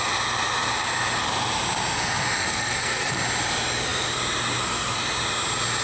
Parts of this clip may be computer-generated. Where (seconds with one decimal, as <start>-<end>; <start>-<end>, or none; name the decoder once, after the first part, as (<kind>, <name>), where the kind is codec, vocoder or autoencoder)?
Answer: 2.4-3.1 (codec, SNAC)